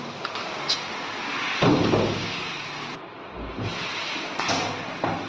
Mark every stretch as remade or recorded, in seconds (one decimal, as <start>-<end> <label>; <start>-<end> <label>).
0.0-1.7 recorded; 1.7-3.2 remade; 3.2-5.3 recorded